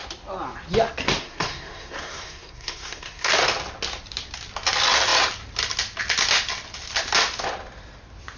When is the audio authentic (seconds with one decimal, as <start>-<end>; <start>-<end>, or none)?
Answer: 0.0-1.2; 3.3-8.4